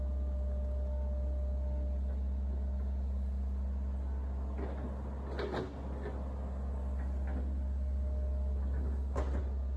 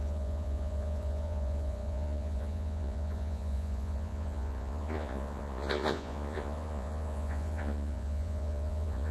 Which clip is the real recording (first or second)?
first